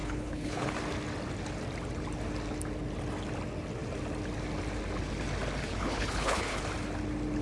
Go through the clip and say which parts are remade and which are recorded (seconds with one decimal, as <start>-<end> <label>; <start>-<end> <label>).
0.0-0.7 remade; 0.7-5.6 recorded; 5.6-6.6 remade; 6.6-7.4 recorded